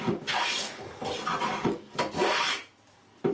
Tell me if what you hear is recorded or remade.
recorded